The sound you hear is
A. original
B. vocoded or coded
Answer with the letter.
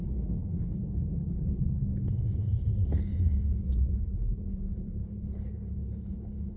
B